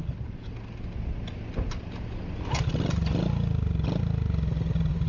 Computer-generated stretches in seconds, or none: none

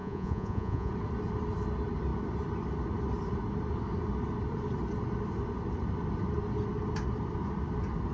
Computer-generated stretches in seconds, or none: 0.0-0.9 (vocoder, Vocos)

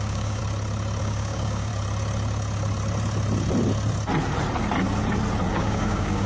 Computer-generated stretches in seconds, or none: 0.0-0.4 (codec, DAC); 1.0-1.7; 5.5-6.3

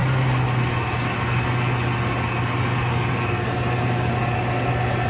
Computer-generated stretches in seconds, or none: none

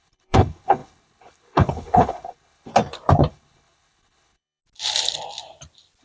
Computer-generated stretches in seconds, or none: 0.0-2.7 (codec, HILCodec); 3.3-4.6